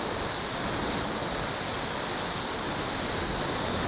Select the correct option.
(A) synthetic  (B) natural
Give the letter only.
B